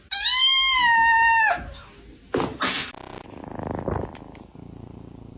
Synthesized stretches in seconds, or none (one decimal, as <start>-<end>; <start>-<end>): 2.5-3.4